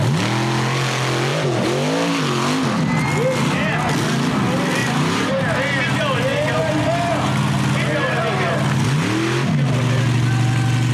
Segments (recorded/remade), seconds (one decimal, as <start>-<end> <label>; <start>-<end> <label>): 0.0-4.8 recorded; 4.8-5.3 remade; 5.3-6.3 recorded; 6.3-7.1 remade; 7.1-10.9 recorded